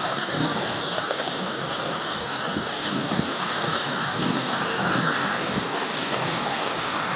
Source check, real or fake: fake